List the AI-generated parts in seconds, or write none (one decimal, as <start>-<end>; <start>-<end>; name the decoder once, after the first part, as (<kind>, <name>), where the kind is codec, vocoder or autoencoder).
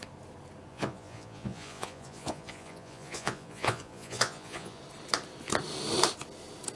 0.7-4.8 (vocoder, Vocos)